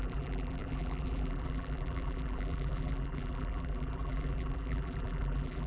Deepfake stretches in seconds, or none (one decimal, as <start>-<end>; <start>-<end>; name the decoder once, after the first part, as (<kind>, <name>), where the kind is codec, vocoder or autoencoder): 0.0-5.7 (vocoder, BigVGAN v2)

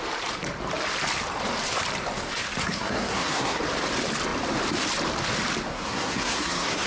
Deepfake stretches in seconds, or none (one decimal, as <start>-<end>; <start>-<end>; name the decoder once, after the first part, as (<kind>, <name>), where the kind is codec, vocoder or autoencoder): 2.6-3.6 (codec, SNAC); 5.7-6.9

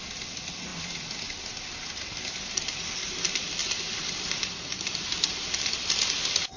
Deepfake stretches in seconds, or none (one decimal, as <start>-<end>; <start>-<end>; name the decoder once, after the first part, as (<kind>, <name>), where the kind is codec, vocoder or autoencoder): none

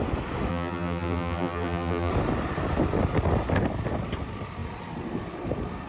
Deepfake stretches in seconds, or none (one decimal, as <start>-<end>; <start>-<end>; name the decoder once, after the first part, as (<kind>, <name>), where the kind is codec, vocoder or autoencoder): 0.5-2.1 (vocoder, BigVGAN v2)

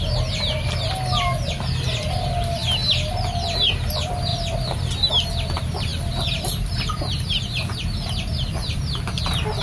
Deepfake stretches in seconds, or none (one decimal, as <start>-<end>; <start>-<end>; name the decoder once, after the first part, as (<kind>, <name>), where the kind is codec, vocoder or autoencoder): 5.9-8.5 (vocoder, BigVGAN v2)

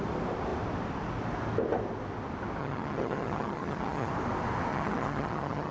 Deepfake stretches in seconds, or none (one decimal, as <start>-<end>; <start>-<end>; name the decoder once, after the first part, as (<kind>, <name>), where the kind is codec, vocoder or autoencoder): 2.6-4.1 (vocoder, HiFi-GAN); 4.7-5.7